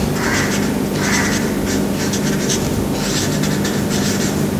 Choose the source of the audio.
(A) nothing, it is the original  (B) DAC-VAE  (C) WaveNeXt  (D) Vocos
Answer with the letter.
A